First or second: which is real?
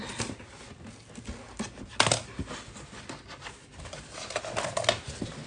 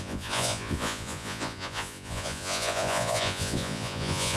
first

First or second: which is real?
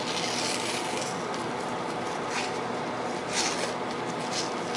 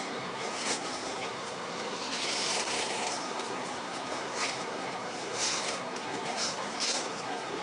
first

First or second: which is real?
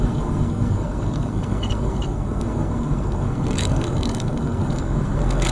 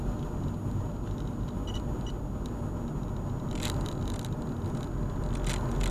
second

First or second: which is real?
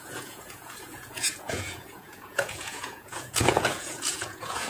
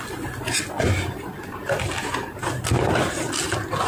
second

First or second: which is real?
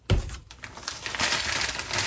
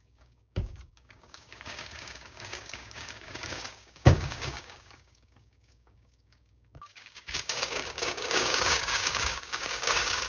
first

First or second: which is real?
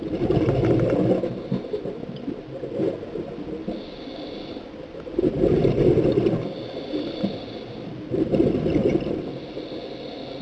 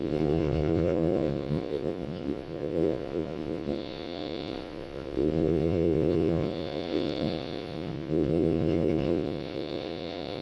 first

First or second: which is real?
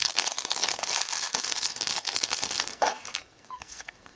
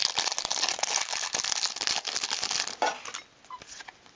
second